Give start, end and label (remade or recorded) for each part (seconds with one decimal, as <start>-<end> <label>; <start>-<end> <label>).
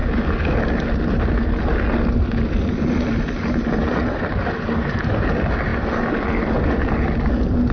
0.0-7.7 recorded